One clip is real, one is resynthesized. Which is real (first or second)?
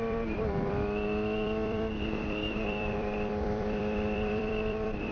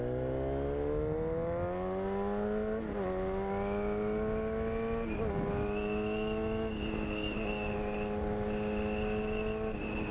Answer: second